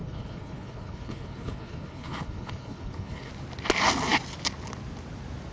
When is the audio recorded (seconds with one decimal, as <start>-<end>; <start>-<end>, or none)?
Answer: 3.3-5.5